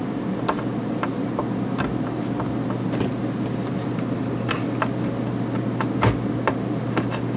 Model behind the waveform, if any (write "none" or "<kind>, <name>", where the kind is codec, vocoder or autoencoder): none